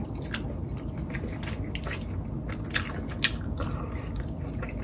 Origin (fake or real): real